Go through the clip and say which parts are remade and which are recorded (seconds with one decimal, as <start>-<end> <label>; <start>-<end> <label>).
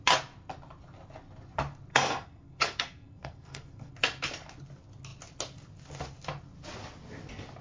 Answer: 0.0-1.9 recorded; 1.9-3.9 remade; 3.9-7.6 recorded